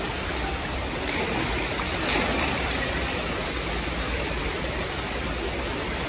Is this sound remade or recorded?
recorded